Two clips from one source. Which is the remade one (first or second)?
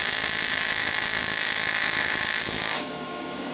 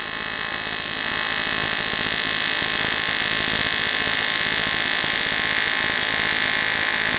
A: first